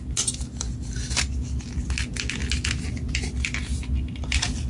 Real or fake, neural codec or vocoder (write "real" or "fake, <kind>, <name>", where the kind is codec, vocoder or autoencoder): real